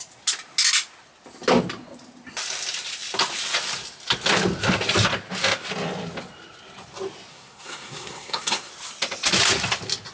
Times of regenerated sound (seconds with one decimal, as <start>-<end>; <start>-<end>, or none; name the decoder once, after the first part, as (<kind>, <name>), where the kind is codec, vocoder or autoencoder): 7.3-8.7 (codec, SNAC)